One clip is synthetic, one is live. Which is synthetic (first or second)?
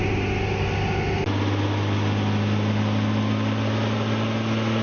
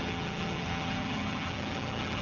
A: second